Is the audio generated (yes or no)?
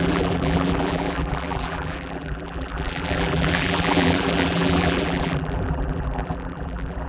yes